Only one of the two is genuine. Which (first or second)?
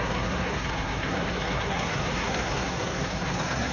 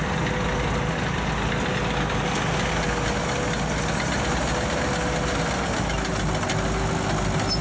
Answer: second